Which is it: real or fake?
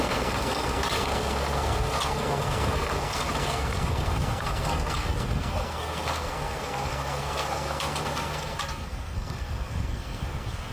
fake